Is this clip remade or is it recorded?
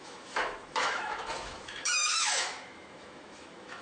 remade